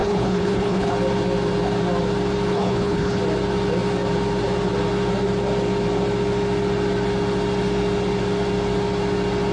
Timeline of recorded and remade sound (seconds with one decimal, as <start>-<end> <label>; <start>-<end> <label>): 0.0-0.9 remade; 0.9-2.5 recorded; 2.5-3.2 remade; 3.2-9.5 recorded